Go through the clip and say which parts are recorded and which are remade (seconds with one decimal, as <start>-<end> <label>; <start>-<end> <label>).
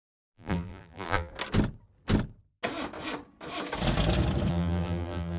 0.0-1.3 remade; 1.3-4.5 recorded; 4.5-5.4 remade